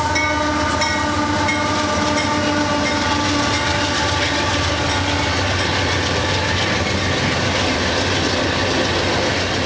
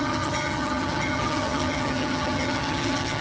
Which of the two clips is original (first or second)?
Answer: first